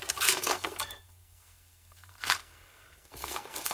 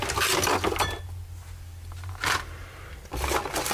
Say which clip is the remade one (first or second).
first